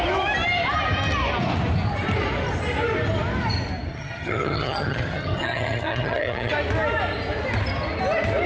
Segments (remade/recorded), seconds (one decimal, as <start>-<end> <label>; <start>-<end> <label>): 0.0-3.9 recorded; 3.9-6.5 remade; 6.5-8.5 recorded